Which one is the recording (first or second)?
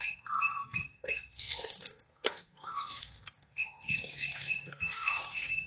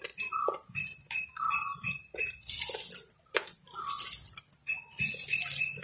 second